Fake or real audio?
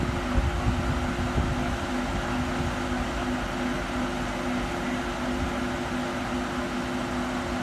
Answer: real